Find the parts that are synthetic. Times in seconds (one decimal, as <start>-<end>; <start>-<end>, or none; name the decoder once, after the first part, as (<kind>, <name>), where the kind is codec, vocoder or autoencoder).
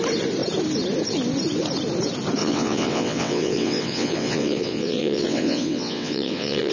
2.4-6.7 (vocoder, WaveNeXt)